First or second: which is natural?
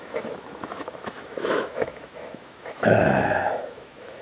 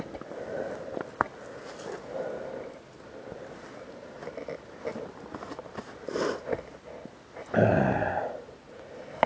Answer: second